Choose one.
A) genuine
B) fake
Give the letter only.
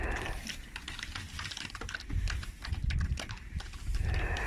A